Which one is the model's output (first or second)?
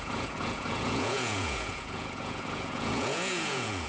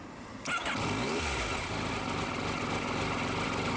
first